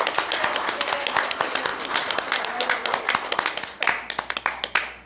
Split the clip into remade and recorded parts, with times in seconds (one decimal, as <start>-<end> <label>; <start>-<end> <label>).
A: 0.0-5.1 recorded